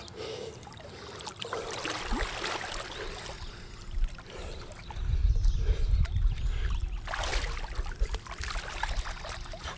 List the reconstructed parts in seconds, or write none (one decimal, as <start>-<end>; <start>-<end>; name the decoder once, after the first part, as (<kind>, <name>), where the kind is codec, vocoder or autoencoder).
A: none